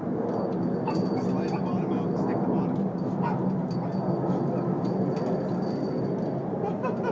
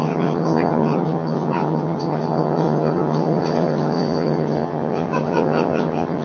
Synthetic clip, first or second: second